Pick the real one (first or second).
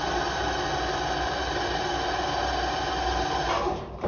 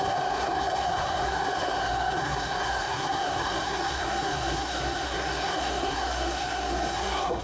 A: first